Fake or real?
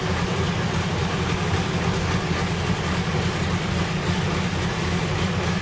real